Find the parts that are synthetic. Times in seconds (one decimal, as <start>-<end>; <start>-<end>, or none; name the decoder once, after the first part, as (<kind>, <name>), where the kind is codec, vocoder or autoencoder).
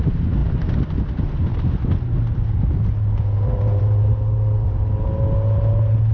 none